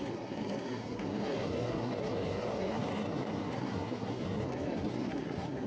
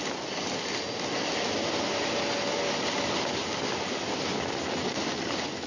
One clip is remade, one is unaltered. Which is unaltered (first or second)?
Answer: second